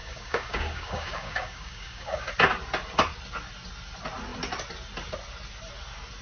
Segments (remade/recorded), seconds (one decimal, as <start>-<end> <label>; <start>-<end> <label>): 0.0-2.3 remade; 2.3-6.2 recorded